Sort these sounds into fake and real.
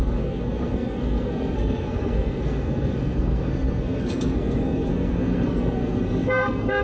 fake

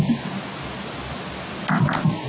real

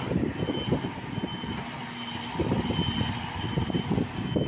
real